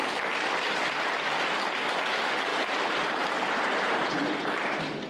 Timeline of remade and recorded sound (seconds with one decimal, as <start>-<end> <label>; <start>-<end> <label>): 0.0-2.5 recorded; 2.5-4.2 remade; 4.2-5.1 recorded